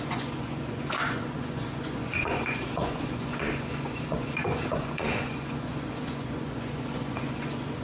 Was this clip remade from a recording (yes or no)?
yes